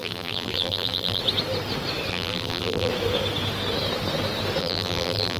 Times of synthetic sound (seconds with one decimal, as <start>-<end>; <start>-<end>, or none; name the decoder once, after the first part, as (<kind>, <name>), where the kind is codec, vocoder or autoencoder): 0.0-1.2 (vocoder, BigVGAN v2); 2.1-2.9; 4.6-5.4